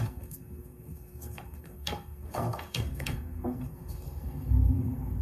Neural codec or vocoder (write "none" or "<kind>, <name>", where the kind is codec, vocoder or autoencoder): codec, SNAC